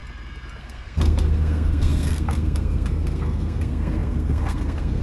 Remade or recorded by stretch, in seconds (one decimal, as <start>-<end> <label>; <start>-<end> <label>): 0.0-0.6 recorded; 0.6-5.0 remade